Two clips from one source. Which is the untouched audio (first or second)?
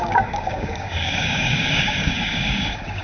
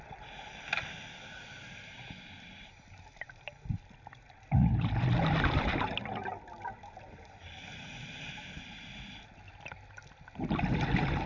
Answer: second